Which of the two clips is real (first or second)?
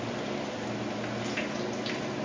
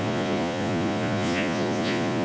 first